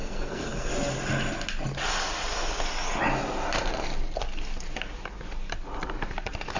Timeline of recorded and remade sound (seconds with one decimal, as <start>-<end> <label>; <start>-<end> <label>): 0.0-0.7 remade; 0.7-6.6 recorded